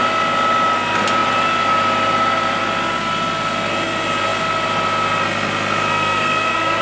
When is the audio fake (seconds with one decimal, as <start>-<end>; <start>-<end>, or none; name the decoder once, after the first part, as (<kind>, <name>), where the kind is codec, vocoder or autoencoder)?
5.9-6.8 (codec, SNAC)

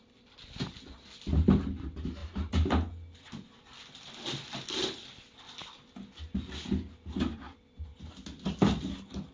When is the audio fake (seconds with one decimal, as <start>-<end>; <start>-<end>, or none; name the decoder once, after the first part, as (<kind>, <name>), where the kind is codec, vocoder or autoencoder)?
none